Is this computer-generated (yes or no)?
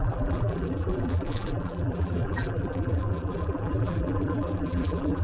yes